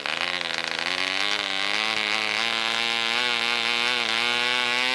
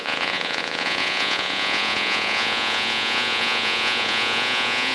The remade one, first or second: second